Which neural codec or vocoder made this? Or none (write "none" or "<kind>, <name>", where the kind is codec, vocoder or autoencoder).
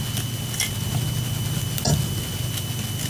none